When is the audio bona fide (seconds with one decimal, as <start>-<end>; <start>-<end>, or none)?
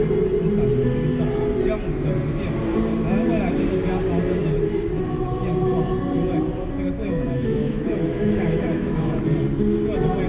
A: 0.0-7.0; 9.2-10.3